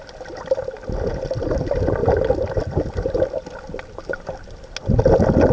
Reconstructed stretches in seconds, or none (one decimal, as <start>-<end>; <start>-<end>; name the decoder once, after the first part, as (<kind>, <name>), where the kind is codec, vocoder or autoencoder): none